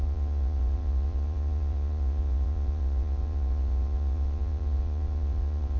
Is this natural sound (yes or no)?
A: no